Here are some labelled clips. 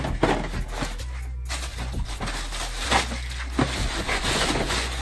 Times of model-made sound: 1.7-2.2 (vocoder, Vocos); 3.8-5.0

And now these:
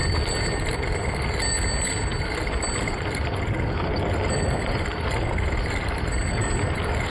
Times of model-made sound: 4.3-7.1 (vocoder, BigVGAN v2)

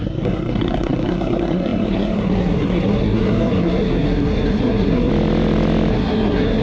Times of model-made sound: 0.0-5.1 (codec, SNAC); 5.9-6.6

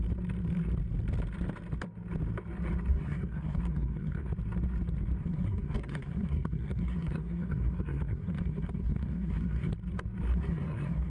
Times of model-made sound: 2.9-4.3 (codec, SNAC); 5.2-9.7; 10.3-11.1